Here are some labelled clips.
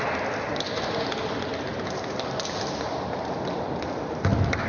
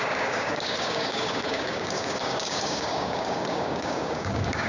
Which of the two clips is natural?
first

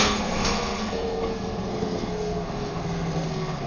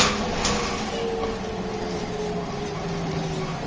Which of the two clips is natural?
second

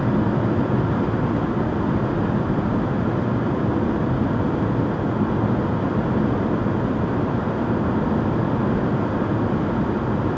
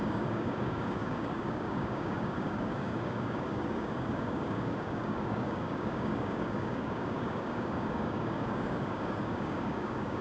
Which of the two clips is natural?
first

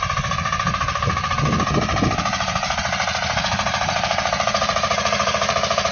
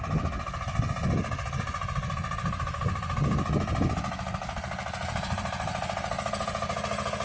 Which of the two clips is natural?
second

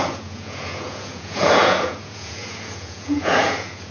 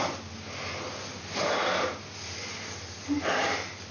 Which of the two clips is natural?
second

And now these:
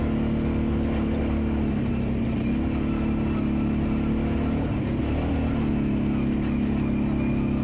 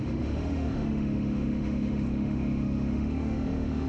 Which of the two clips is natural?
first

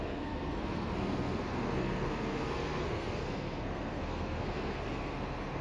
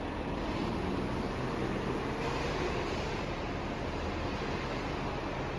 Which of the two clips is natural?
second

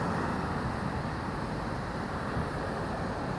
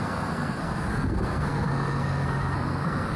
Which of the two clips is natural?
first